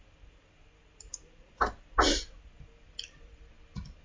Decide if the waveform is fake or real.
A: real